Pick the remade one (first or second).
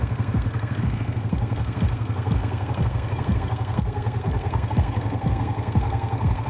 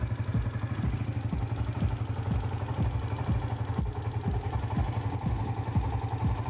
first